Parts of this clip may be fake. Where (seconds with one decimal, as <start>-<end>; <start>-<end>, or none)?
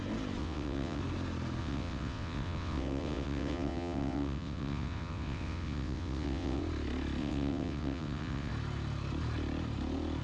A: 0.4-1.0; 1.6-6.6; 7.2-8.5